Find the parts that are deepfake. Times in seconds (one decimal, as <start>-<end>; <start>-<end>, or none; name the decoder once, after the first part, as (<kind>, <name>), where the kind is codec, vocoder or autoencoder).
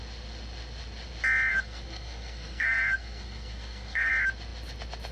1.5-4.1 (codec, SNAC)